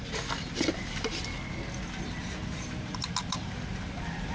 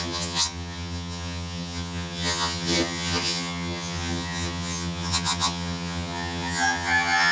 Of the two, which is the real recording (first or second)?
first